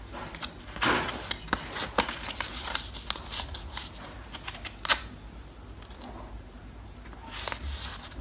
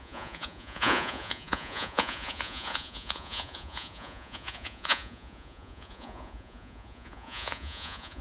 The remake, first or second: second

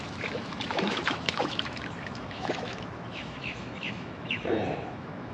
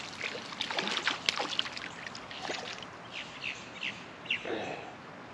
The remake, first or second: first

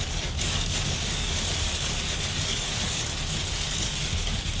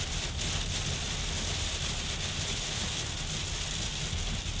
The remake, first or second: first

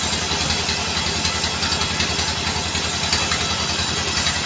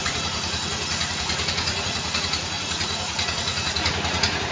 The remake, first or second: second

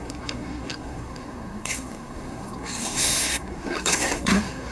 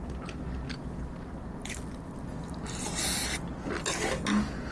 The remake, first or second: first